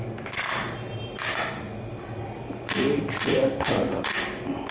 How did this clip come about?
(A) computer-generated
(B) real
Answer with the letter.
B